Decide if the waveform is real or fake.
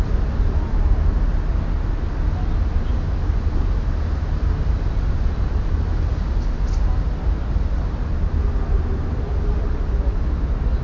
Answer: real